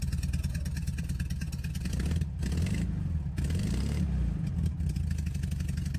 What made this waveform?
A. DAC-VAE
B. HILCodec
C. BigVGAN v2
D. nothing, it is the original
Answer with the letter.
D